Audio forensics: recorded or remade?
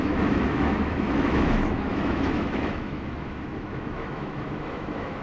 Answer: remade